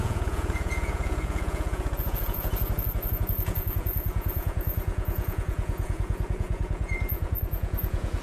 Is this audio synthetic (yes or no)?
yes